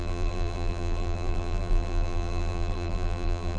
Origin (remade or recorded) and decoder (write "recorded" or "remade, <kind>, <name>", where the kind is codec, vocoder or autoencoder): remade, vocoder, BigVGAN v2